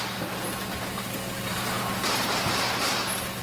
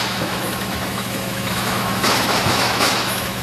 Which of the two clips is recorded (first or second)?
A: first